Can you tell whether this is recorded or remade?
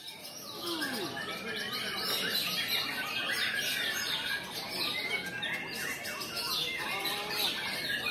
recorded